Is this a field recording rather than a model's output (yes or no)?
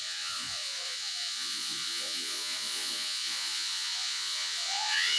no